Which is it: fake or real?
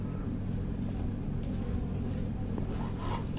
real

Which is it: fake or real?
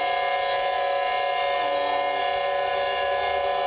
real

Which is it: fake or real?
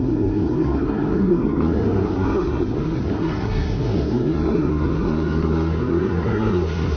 fake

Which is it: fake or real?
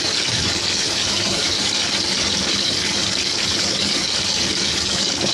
fake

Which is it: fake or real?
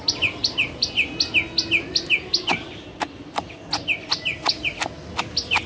real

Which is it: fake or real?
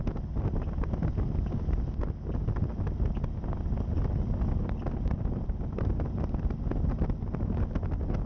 real